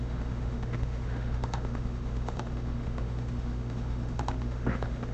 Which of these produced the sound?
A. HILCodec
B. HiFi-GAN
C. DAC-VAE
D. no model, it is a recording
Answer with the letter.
C